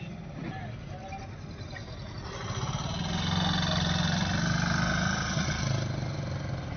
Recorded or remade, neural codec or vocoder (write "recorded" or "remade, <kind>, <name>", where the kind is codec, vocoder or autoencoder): recorded